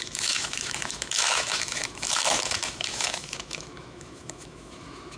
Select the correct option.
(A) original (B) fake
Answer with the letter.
B